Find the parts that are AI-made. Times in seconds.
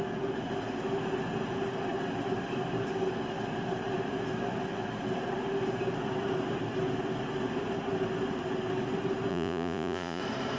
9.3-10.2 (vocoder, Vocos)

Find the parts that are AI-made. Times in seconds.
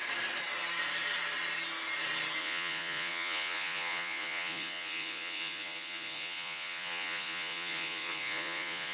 2.4-8.9 (vocoder, Vocos)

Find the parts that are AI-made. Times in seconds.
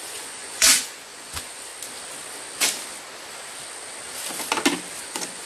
0.0-1.7 (vocoder, Vocos); 5.0-5.5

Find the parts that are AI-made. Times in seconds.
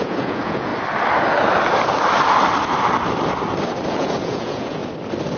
0.0-0.7 (vocoder, Vocos); 3.9-4.8